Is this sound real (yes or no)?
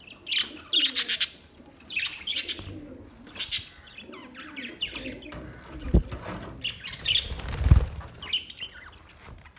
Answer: yes